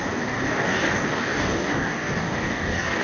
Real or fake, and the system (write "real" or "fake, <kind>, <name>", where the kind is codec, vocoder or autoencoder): fake, codec, DAC